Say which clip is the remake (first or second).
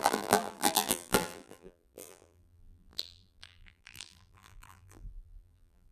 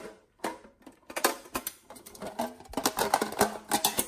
first